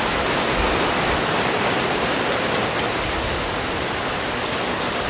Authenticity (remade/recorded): recorded